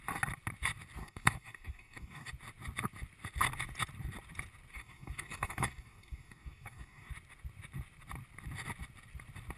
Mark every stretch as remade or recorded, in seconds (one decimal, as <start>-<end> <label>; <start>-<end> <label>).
0.0-1.0 recorded; 1.0-2.3 remade; 2.3-4.7 recorded; 4.7-7.1 remade; 7.1-9.6 recorded